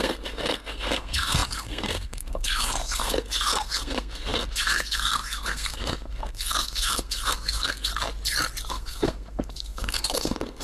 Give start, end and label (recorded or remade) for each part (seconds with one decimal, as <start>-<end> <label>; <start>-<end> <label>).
0.0-7.9 remade; 7.9-8.7 recorded; 8.7-10.6 remade